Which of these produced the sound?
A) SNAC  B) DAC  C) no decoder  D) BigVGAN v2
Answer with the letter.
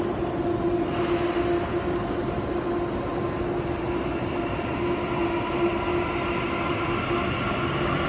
C